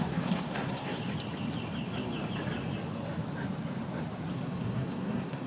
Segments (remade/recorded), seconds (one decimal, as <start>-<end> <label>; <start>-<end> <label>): 0.0-1.0 remade; 1.0-4.3 recorded; 4.3-5.5 remade